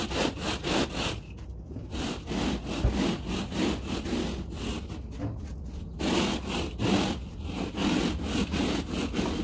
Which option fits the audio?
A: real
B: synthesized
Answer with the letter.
A